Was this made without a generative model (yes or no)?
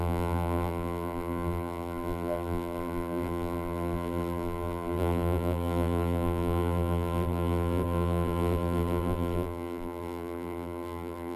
no